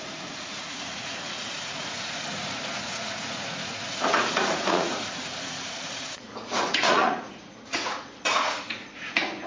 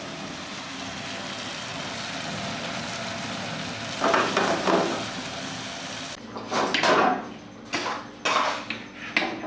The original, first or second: second